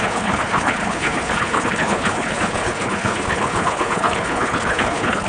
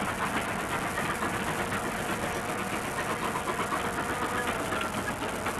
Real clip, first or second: second